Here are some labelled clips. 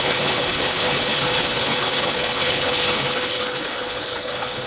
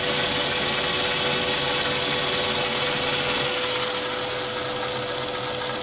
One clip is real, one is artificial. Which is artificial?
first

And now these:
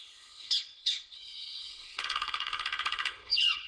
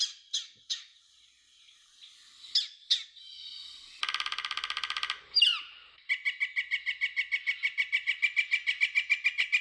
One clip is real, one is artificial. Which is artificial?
first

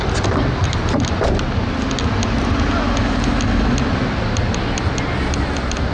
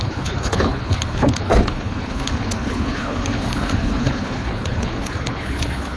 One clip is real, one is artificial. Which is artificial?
second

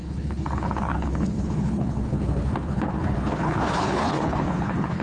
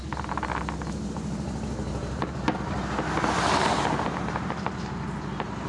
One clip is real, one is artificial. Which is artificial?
first